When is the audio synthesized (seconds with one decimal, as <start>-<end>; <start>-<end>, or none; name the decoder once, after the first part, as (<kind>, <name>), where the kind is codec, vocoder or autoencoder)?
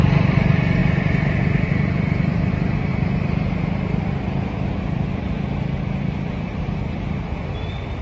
0.0-2.9 (vocoder, BigVGAN v2); 4.7-8.0